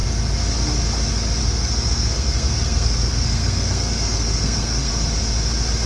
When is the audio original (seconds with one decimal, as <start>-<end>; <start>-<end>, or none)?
0.0-1.4; 4.9-5.9